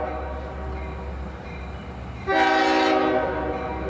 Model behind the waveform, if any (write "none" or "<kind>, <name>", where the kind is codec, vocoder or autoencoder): none